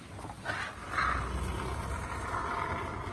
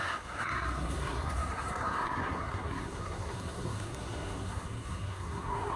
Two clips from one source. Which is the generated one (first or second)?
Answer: second